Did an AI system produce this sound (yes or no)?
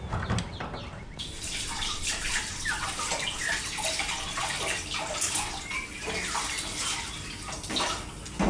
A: no